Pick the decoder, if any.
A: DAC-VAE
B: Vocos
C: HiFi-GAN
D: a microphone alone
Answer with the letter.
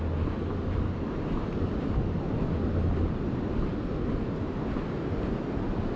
D